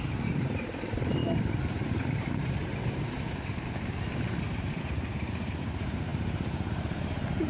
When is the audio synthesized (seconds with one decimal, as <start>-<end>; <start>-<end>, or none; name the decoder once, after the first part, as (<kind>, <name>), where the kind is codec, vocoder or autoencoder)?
0.0-7.5 (vocoder, BigVGAN v2)